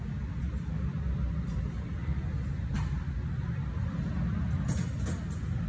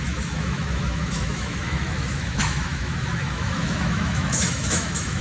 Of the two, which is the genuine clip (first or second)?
first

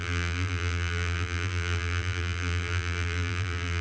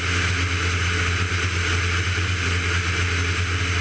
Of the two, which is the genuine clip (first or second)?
second